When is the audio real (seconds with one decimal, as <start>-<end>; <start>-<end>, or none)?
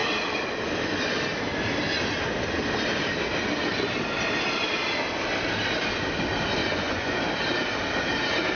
0.0-6.6; 7.2-8.6